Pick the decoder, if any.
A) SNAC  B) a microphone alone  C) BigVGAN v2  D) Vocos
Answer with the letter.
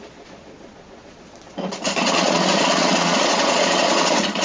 D